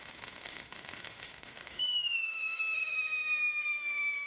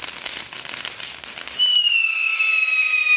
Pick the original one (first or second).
second